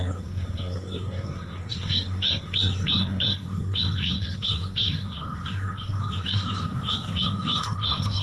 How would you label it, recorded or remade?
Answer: remade